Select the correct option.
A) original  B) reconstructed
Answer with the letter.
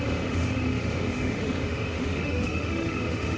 B